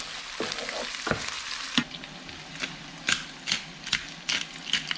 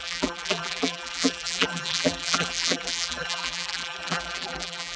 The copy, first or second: second